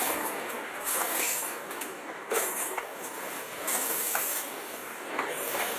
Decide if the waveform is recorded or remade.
remade